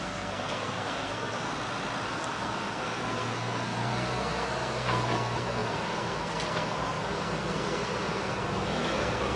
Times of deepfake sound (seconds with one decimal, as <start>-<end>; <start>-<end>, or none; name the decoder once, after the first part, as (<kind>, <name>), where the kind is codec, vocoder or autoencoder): 0.0-1.5 (codec, SNAC); 2.1-9.4